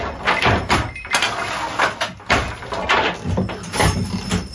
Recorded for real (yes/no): yes